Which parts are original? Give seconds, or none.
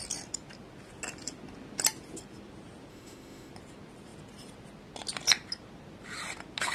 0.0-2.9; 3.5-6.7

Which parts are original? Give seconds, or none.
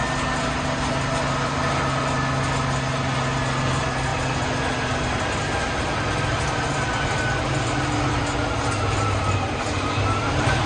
0.0-10.7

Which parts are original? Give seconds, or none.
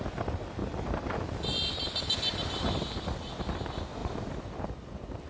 0.0-0.6; 3.4-4.0; 4.6-5.3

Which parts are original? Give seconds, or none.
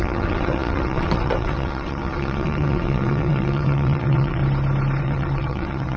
4.4-5.0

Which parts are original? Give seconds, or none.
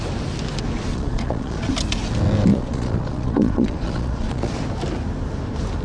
0.0-0.9; 1.7-2.5; 4.5-5.8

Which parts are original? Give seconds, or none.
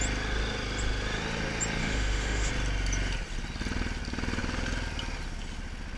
0.0-1.8; 2.5-6.0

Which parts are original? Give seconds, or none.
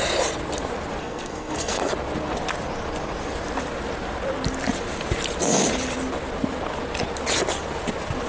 0.0-1.0; 1.9-8.3